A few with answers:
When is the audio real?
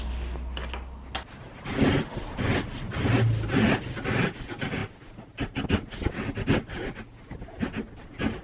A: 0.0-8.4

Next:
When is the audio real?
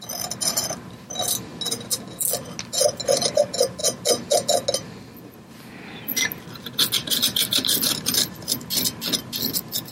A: 0.0-9.9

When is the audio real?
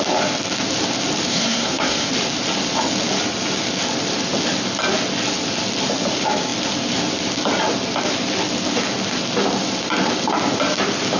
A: 0.0-1.3; 2.1-11.2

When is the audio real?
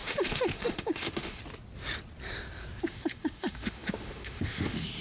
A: 1.4-2.8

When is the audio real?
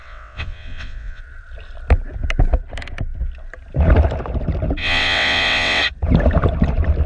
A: 1.2-4.8; 5.8-7.1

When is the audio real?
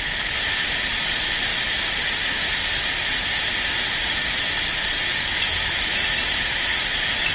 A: 0.0-7.3